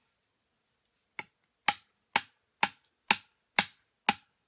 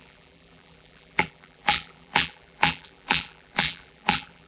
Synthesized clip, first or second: second